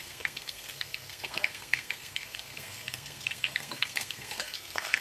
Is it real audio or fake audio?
fake